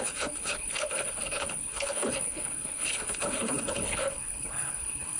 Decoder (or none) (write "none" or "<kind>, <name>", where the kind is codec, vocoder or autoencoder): codec, HILCodec